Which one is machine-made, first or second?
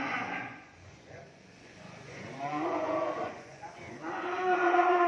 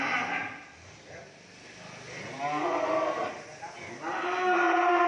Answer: first